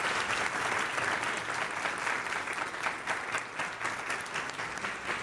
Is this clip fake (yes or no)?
no